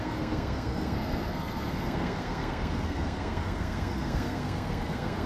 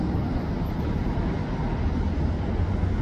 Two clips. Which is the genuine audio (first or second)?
second